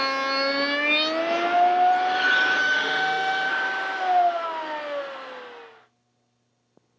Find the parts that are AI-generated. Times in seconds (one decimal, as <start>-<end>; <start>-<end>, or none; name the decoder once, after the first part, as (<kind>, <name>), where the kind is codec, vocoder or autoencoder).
2.6-3.5 (autoencoder, DAC-VAE)

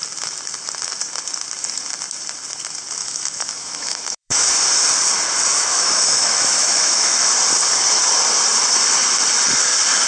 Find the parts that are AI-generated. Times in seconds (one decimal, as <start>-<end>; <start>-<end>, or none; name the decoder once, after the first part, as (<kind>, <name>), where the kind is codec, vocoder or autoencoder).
3.0-4.5 (autoencoder, DAC-VAE); 5.5-7.3

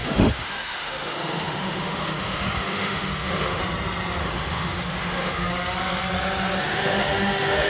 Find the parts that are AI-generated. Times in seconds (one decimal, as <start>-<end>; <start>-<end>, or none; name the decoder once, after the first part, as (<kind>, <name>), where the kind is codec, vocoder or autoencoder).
0.0-3.6 (autoencoder, DAC-VAE); 4.2-5.5; 6.6-7.7

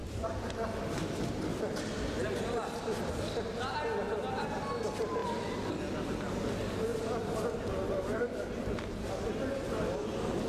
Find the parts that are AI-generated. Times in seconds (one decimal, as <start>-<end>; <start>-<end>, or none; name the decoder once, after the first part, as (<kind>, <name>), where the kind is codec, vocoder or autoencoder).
none

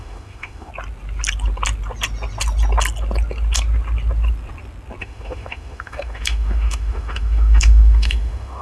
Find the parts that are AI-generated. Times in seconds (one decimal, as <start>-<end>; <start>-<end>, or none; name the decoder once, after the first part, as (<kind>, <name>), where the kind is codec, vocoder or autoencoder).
0.0-0.7 (autoencoder, DAC-VAE); 5.0-8.6